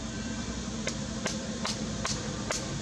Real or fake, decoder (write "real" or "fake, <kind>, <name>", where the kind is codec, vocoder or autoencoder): fake, vocoder, BigVGAN v2